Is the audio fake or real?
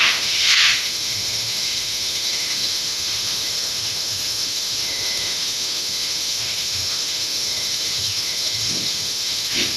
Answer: fake